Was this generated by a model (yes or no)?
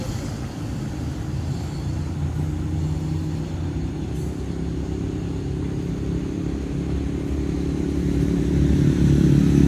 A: no